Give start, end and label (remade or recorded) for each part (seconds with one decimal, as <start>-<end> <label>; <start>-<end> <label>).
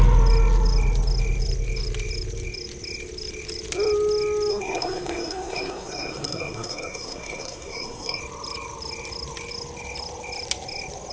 0.0-4.5 recorded; 4.5-8.2 remade; 8.2-11.1 recorded